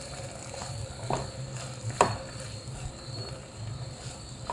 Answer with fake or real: real